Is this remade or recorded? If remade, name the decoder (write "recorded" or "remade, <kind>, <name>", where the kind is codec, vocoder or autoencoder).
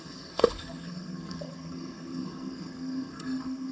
remade, codec, SNAC